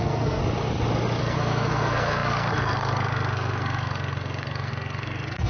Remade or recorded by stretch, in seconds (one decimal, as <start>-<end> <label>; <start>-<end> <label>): 0.0-0.4 remade; 0.4-1.2 recorded; 1.2-5.5 remade